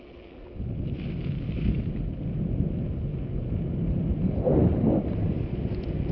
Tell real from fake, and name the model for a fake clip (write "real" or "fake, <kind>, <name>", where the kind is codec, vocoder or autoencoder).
real